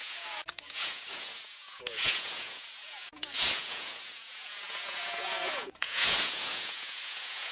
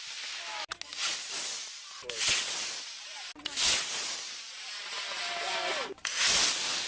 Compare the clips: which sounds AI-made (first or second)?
first